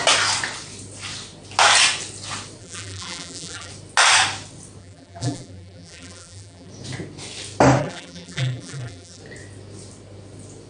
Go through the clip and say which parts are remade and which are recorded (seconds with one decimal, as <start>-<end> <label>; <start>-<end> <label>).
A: 0.0-2.6 recorded; 2.6-3.7 remade; 3.7-4.8 recorded; 4.8-6.7 remade; 6.7-7.8 recorded; 7.8-9.2 remade; 9.2-10.7 recorded